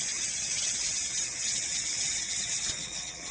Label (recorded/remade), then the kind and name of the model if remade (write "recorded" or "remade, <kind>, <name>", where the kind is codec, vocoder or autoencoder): remade, vocoder, WaveNeXt